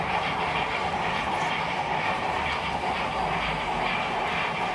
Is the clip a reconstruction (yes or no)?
yes